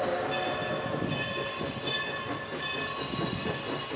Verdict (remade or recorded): recorded